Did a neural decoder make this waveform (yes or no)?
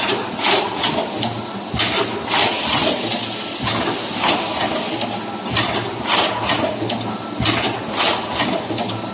no